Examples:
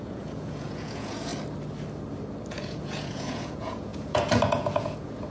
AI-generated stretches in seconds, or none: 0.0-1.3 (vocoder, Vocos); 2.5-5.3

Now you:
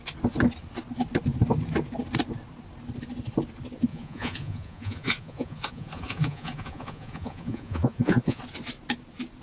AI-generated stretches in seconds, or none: 3.9-8.4 (vocoder, Vocos)

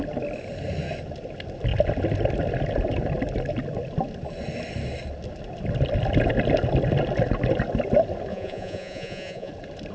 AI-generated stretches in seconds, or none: 8.3-9.5 (vocoder, Vocos)

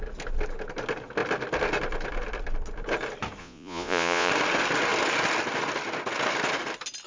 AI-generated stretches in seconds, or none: 3.4-4.3 (vocoder, Vocos)